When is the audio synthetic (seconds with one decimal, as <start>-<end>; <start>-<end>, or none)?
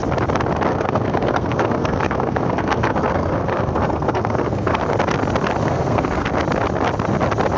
0.7-4.8; 5.6-6.3